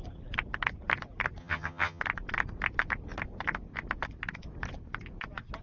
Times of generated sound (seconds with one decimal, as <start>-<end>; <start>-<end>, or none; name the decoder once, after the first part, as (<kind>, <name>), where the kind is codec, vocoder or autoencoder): 1.4-2.0 (vocoder, HiFi-GAN)